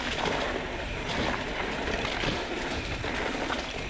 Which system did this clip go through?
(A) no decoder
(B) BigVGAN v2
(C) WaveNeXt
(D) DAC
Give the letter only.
A